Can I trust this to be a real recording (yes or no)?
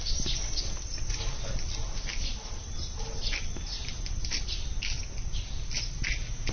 yes